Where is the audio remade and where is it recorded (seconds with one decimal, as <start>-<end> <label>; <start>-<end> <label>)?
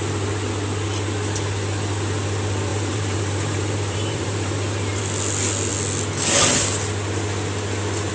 0.0-2.7 recorded; 2.7-5.0 remade; 5.0-8.1 recorded